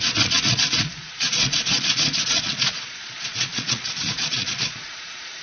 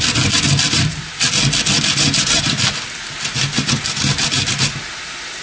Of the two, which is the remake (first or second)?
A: first